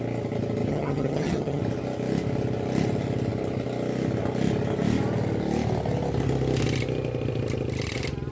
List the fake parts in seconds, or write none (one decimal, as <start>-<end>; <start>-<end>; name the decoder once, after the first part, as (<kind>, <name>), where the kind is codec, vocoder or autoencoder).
0.7-1.6 (vocoder, HiFi-GAN)